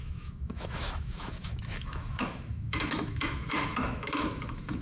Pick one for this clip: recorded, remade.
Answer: remade